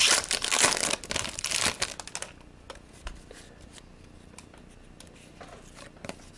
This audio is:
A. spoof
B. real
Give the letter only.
B